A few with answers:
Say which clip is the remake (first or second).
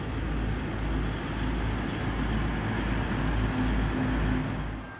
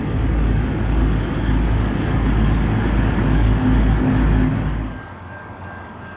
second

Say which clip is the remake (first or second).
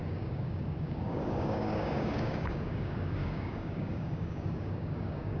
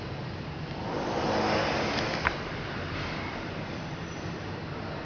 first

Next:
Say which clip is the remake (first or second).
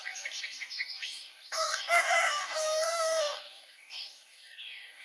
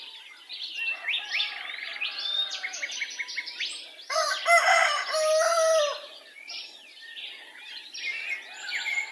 first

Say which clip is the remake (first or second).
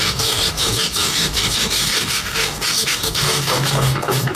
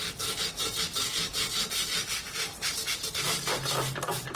first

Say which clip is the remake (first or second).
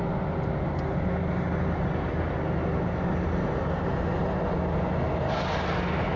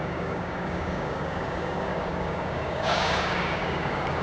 second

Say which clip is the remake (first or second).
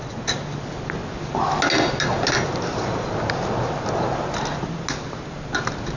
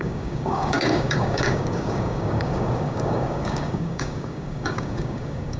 second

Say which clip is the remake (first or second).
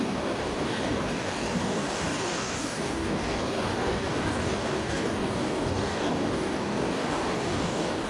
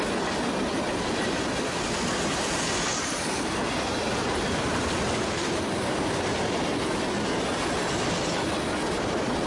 first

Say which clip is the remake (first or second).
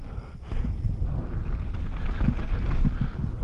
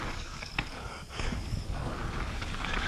second